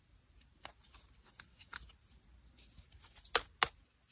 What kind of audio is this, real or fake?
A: real